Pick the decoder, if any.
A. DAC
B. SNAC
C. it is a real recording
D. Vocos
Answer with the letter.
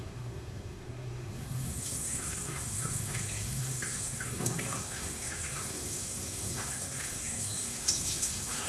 B